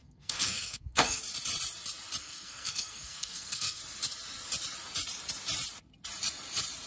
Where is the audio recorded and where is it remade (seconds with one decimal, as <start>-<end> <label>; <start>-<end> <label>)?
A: 0.0-1.2 remade; 1.2-2.2 recorded; 2.2-3.8 remade; 3.8-6.9 recorded